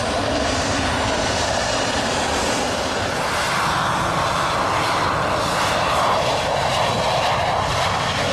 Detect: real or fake real